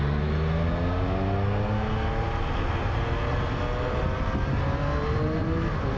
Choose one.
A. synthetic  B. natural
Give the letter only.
B